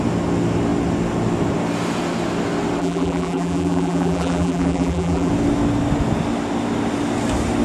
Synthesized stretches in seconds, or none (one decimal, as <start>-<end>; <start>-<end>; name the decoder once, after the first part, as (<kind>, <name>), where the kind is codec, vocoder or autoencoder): 2.8-5.3 (vocoder, BigVGAN v2)